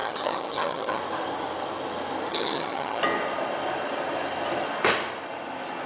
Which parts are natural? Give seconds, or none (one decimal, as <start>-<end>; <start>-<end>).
1.0-2.3; 3.0-5.9